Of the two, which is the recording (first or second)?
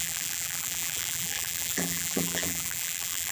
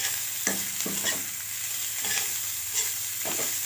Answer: second